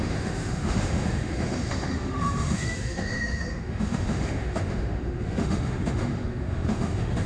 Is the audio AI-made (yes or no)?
yes